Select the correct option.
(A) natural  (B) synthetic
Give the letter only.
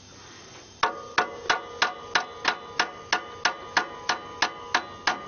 A